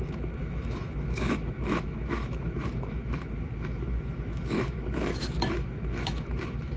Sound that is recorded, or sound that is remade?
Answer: remade